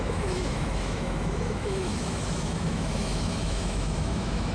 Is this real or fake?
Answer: fake